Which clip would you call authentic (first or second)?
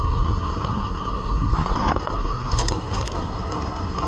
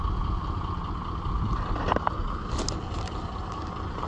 second